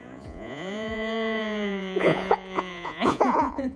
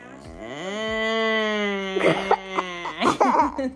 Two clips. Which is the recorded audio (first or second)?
second